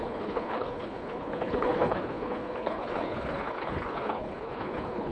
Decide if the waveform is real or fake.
fake